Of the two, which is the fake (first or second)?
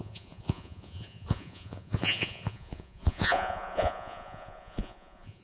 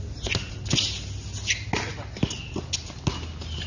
first